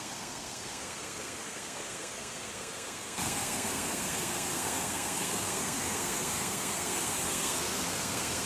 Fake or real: fake